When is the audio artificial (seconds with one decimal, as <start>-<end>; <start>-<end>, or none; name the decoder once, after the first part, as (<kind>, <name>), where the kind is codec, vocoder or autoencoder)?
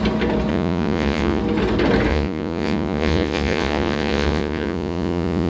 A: 0.5-1.4 (vocoder, Vocos); 2.1-5.5